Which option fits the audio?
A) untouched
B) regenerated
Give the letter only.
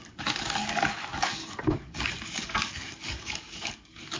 B